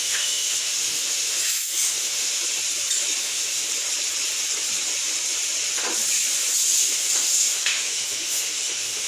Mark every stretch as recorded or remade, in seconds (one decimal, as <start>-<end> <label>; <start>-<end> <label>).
0.0-2.4 remade; 2.4-3.2 recorded; 3.2-3.7 remade; 3.7-6.8 recorded; 6.8-9.1 remade